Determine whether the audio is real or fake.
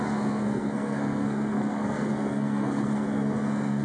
fake